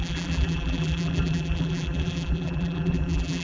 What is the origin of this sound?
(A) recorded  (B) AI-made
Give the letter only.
B